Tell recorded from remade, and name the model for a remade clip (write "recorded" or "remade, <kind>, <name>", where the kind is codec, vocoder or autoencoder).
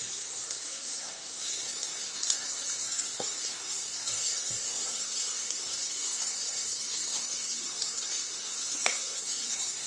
remade, codec, SNAC